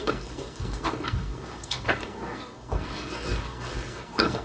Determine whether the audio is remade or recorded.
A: remade